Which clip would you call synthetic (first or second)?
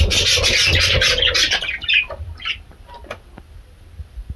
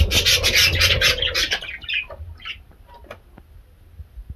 first